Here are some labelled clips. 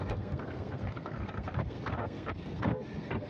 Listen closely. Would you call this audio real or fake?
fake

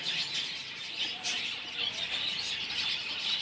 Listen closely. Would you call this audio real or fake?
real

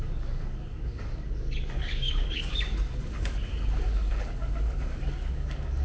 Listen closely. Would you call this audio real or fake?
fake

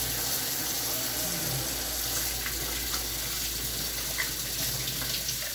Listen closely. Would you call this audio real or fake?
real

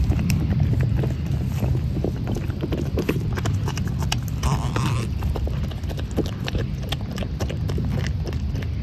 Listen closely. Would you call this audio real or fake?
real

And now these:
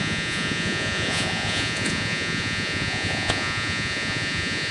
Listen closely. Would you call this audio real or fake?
fake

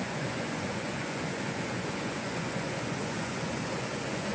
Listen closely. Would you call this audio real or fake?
fake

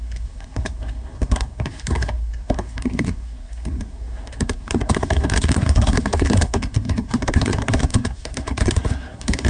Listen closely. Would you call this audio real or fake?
fake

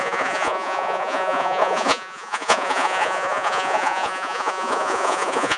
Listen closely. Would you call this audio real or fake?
fake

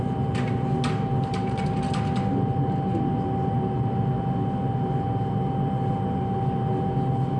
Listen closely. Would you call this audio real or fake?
real